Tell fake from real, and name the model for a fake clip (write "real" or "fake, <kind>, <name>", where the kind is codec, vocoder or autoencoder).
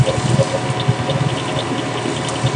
real